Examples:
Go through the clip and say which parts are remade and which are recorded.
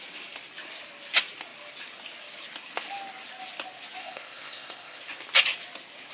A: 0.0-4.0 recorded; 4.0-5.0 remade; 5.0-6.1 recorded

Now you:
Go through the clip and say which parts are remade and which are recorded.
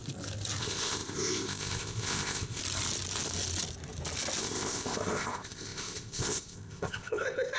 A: 0.0-0.6 recorded; 0.6-2.6 remade; 2.6-4.4 recorded; 4.4-7.6 remade